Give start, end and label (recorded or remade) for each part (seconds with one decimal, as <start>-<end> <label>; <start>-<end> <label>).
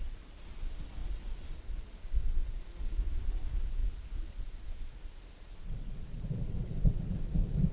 0.0-5.6 recorded; 5.6-7.1 remade; 7.1-7.7 recorded